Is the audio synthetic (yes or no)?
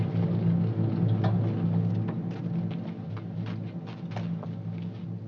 no